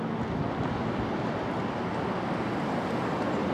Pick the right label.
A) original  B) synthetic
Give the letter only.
A